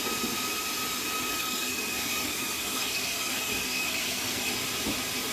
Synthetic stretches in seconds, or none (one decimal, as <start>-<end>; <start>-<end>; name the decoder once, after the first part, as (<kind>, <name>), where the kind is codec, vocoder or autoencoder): 1.3-4.5 (codec, SNAC)